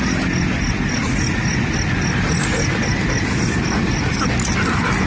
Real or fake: real